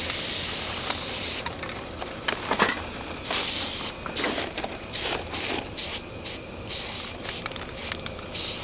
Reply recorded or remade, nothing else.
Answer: recorded